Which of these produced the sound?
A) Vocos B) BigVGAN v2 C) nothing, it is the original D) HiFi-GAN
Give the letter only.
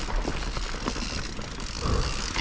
C